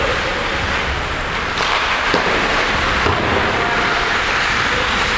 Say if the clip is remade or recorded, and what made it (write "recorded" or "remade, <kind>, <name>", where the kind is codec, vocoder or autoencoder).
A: recorded